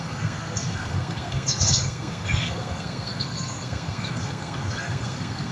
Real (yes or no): no